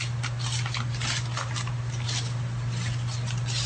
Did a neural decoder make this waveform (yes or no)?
no